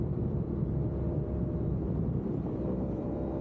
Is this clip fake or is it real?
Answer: fake